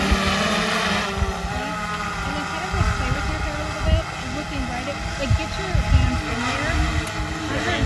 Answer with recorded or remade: recorded